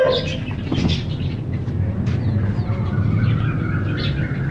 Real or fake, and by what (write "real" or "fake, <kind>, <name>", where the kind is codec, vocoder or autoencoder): real